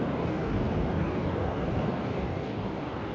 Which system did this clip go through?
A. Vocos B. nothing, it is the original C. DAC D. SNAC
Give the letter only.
C